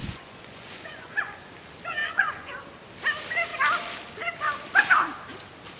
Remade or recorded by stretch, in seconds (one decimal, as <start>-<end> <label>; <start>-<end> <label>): 0.0-1.5 remade; 1.5-2.0 recorded; 2.0-2.5 remade; 2.5-5.8 recorded